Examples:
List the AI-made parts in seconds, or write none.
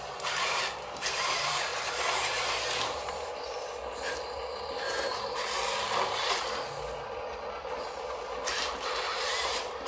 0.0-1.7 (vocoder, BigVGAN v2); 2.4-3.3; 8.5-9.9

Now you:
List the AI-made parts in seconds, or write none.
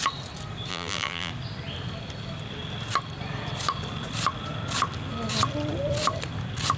0.7-1.3 (vocoder, BigVGAN v2)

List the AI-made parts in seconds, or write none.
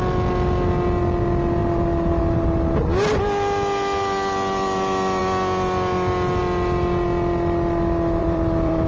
8.2-8.9 (vocoder, BigVGAN v2)